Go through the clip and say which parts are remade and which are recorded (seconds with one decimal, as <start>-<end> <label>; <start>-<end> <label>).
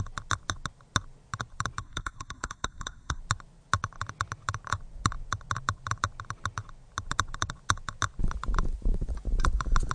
0.0-1.8 recorded; 1.8-3.2 remade; 3.2-9.9 recorded